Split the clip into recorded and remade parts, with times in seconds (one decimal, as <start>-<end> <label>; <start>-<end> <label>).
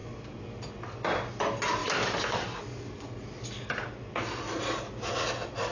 0.0-5.7 recorded